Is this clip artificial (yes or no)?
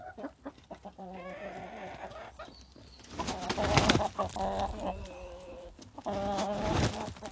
no